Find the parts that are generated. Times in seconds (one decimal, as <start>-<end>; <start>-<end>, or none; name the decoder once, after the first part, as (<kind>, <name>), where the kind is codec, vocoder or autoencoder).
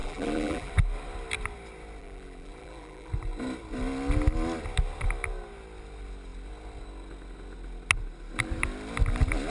0.0-0.7 (vocoder, BigVGAN v2); 2.0-3.1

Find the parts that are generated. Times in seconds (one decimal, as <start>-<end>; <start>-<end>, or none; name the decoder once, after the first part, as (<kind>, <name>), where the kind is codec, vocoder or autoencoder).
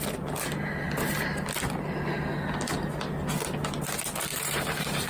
4.3-5.1 (vocoder, BigVGAN v2)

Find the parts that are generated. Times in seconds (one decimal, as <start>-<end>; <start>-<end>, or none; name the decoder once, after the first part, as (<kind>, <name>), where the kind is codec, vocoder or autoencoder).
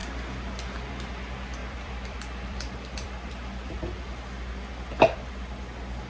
1.6-4.0 (vocoder, BigVGAN v2)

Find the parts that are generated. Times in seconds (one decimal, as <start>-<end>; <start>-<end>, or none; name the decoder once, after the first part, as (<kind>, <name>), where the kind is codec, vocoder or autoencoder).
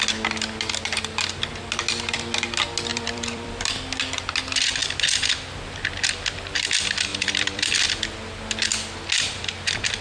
2.9-3.6 (vocoder, BigVGAN v2); 7.1-7.7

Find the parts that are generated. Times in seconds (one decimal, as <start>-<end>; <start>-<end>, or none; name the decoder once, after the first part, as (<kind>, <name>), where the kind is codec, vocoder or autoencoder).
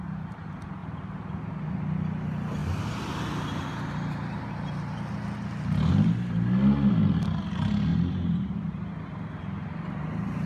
0.8-1.8 (vocoder, BigVGAN v2); 7.9-8.8